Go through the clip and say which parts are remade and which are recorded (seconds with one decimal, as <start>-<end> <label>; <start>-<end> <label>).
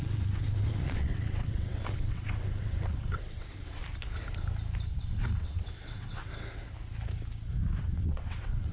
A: 0.0-3.8 remade; 3.8-4.9 recorded; 4.9-6.2 remade; 6.2-7.8 recorded; 7.8-8.7 remade